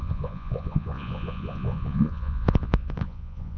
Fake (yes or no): yes